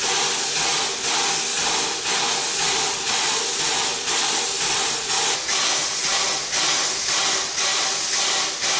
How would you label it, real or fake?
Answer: real